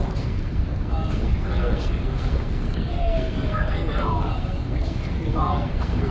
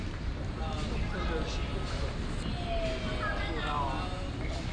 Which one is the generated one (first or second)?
first